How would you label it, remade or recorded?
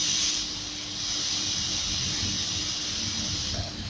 recorded